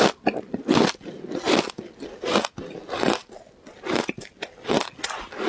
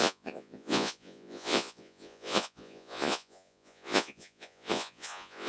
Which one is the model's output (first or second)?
second